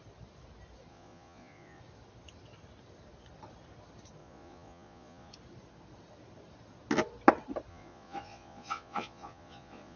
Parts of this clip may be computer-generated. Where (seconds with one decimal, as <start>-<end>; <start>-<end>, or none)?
0.9-1.8; 4.2-5.3; 7.7-10.0